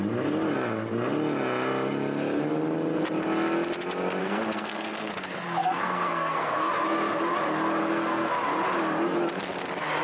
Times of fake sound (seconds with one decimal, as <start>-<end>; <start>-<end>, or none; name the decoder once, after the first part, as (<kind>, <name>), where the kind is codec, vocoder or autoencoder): 4.2-5.1 (codec, SNAC); 5.6-6.7; 7.8-8.3